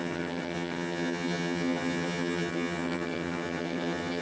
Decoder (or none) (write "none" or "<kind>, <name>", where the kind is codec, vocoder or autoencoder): vocoder, HiFi-GAN